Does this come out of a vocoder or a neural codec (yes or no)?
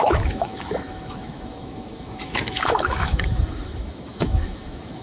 yes